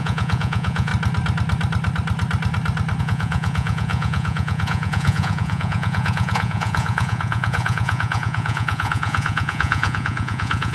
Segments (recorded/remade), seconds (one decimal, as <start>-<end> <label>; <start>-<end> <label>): 0.0-0.9 remade; 0.9-3.0 recorded; 3.0-10.7 remade